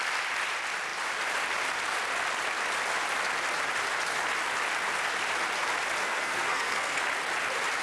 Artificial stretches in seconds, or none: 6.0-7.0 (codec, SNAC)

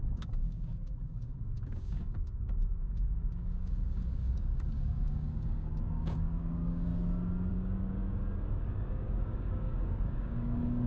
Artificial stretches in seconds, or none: 0.0-6.9 (codec, DAC); 7.5-8.0; 8.6-10.9

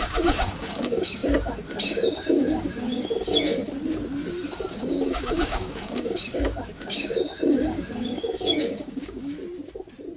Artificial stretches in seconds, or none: 0.0-3.6 (codec, DAC); 4.7-9.4

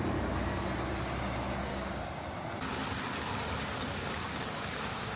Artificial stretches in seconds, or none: 1.7-2.2 (codec, DAC); 3.6-5.2

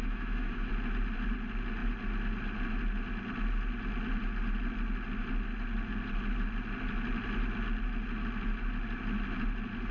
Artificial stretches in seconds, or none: 0.0-0.7 (autoencoder, DAC-VAE)

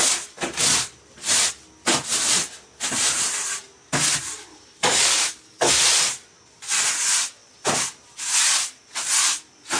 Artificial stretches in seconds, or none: 4.9-5.7 (codec, DAC)